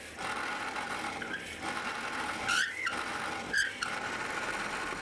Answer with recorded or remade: recorded